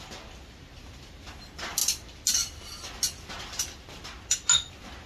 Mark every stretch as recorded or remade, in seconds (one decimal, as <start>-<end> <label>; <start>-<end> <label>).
0.0-5.1 recorded